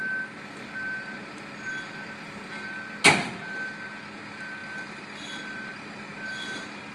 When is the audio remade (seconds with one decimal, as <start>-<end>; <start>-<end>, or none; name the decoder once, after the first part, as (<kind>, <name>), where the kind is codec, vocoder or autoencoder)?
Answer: none